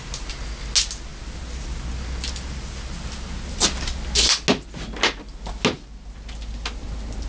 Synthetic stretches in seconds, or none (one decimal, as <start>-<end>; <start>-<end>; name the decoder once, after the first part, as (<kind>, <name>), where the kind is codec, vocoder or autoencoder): none